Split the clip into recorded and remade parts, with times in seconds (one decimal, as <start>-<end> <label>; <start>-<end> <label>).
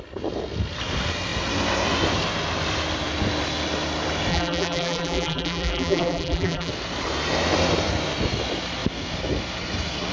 0.0-4.3 recorded; 4.3-6.7 remade; 6.7-10.1 recorded